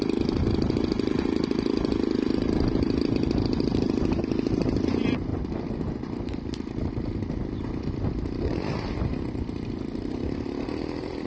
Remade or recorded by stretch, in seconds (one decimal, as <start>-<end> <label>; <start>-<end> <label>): 0.0-11.3 recorded